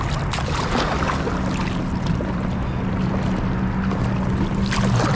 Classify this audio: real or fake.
real